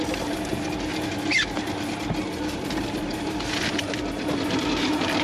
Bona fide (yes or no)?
yes